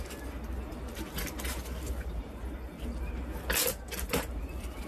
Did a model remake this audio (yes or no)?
yes